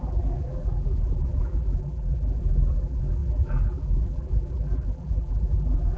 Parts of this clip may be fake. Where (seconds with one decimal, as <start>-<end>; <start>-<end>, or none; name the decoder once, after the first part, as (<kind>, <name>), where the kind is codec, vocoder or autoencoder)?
0.0-6.0 (vocoder, BigVGAN v2)